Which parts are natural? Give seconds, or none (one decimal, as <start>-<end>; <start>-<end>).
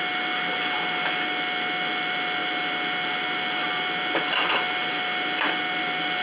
0.0-6.2